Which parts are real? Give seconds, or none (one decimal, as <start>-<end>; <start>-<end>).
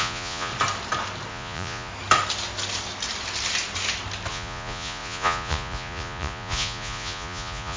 0.5-1.3; 1.9-4.3